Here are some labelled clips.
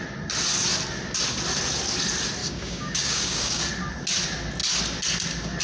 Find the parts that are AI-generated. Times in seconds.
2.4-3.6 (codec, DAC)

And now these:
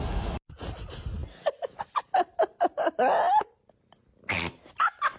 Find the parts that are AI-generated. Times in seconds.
none